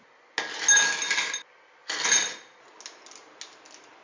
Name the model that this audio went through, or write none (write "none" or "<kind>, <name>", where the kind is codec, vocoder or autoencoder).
none